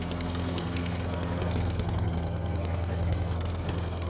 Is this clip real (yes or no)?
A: no